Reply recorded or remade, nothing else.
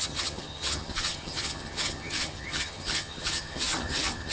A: remade